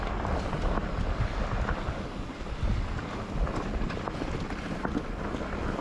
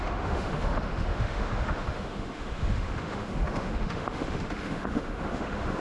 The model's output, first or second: second